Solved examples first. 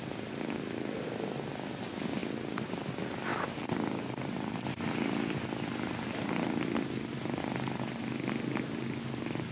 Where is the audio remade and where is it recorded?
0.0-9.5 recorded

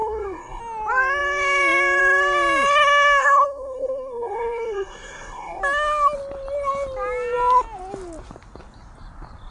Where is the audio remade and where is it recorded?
0.0-0.6 remade; 0.6-3.2 recorded; 3.2-5.6 remade; 5.6-9.5 recorded

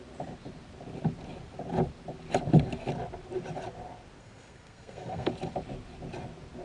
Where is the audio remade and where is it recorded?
0.0-4.2 recorded; 4.2-5.3 remade; 5.3-6.6 recorded

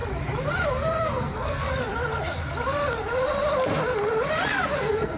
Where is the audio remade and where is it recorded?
0.0-0.7 recorded; 0.7-1.7 remade; 1.7-4.8 recorded; 4.8-5.2 remade

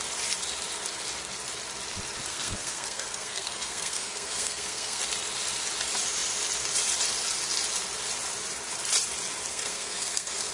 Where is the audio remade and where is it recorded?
0.0-2.3 recorded; 2.3-5.0 remade; 5.0-9.5 recorded; 9.5-10.5 remade

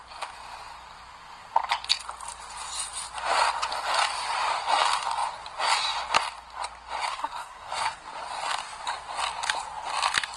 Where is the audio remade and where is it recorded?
0.0-7.0 recorded; 7.0-8.0 remade; 8.0-10.4 recorded

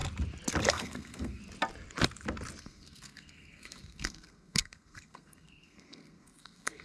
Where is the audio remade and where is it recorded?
0.0-0.7 recorded; 0.7-1.4 remade; 1.4-2.6 recorded; 2.6-6.8 remade